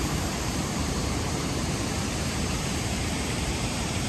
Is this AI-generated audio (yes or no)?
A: yes